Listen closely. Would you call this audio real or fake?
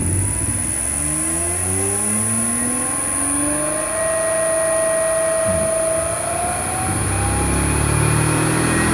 real